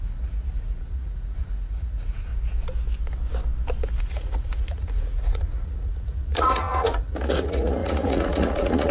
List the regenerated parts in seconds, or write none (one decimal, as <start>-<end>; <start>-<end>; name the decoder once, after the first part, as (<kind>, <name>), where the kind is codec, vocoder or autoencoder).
0.0-2.3 (vocoder, Vocos); 4.0-8.9